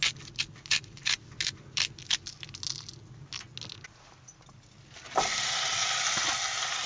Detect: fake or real real